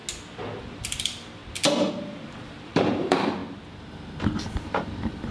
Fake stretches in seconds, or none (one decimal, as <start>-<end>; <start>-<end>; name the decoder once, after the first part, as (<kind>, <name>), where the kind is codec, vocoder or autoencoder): 0.6-1.4 (vocoder, BigVGAN v2); 1.9-3.4; 4.5-5.3